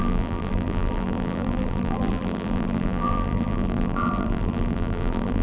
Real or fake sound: fake